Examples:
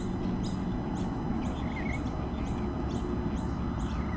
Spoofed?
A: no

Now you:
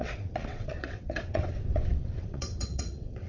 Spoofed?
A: yes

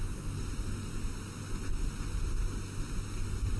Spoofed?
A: no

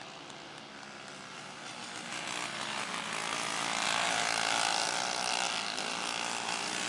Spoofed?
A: no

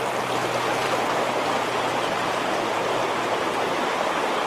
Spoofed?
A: no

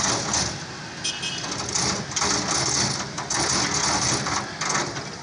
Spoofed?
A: no